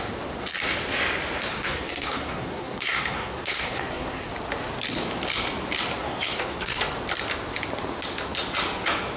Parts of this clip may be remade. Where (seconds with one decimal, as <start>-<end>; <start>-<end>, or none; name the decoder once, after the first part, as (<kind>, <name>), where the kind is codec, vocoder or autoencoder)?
1.5-4.3 (codec, SNAC); 6.0-6.8